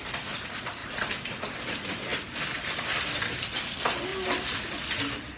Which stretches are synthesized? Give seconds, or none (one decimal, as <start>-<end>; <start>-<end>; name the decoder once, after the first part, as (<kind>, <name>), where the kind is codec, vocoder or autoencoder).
0.8-1.4 (vocoder, BigVGAN v2); 4.1-4.7

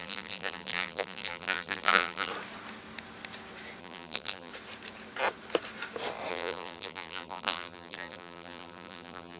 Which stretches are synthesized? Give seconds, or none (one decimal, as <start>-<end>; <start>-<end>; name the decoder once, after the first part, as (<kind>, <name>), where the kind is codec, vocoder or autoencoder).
0.0-2.3 (vocoder, BigVGAN v2); 3.8-4.5; 6.3-9.4

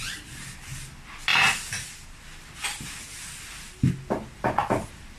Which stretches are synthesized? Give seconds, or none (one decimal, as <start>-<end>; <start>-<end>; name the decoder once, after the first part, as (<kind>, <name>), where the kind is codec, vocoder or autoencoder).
none

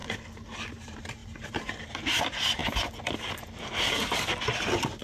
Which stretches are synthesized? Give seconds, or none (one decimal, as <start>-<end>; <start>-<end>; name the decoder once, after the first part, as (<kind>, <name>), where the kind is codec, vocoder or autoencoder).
0.7-1.2 (vocoder, BigVGAN v2); 1.9-2.6